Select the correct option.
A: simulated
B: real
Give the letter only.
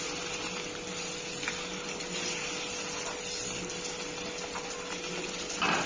B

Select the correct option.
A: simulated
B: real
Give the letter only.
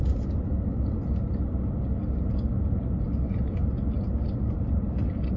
B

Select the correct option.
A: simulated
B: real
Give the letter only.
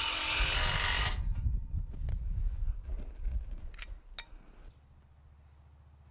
B